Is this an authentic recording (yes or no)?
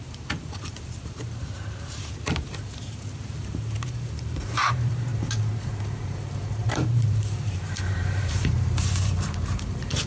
no